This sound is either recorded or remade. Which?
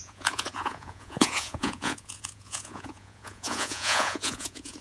remade